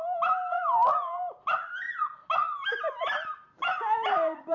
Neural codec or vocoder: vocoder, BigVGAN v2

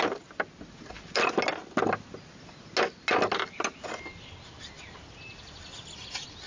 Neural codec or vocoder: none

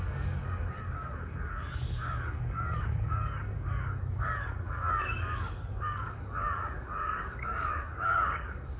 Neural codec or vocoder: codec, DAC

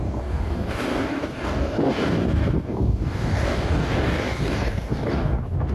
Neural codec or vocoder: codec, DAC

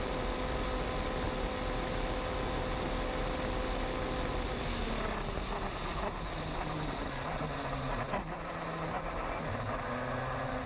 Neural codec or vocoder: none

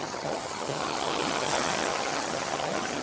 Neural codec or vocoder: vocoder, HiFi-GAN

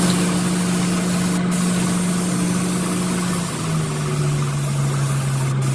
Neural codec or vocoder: none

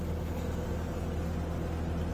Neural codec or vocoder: none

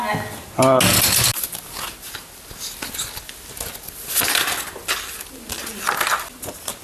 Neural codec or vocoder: none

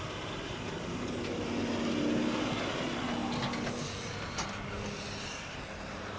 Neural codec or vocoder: none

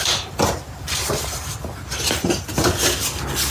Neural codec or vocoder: none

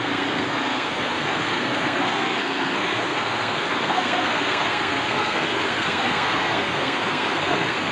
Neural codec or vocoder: codec, SNAC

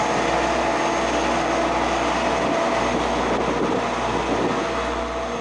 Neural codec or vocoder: none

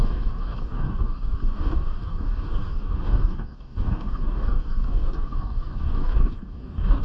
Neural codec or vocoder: codec, DAC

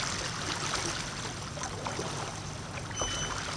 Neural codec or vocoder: none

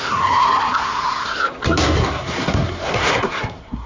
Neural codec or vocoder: codec, SNAC